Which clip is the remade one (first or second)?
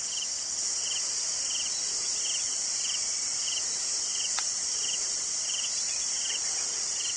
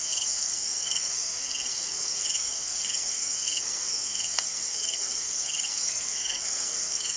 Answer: second